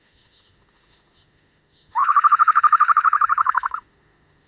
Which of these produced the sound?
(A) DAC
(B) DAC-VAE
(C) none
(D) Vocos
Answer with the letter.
B